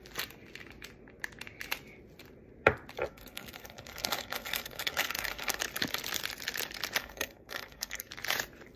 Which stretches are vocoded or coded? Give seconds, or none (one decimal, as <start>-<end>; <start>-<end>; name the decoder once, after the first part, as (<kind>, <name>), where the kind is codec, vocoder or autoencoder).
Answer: 3.1-5.6 (codec, SNAC); 7.0-8.1